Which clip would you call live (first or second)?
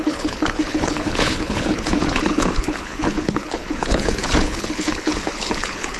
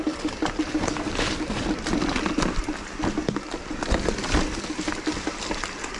second